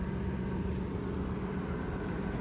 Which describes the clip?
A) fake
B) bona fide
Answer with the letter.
B